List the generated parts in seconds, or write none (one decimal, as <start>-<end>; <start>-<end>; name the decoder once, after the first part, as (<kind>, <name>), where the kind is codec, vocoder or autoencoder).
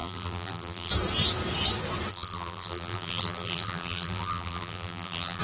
0.0-0.9 (vocoder, BigVGAN v2); 2.1-5.4